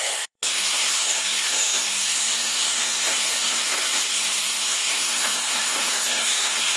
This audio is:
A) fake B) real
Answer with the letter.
A